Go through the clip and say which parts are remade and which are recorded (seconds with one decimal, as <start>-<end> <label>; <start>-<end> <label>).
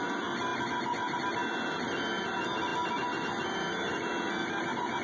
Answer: 0.0-5.0 recorded